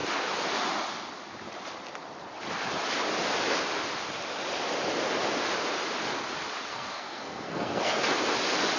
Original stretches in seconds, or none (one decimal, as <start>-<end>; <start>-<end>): 0.0-6.7; 8.0-8.8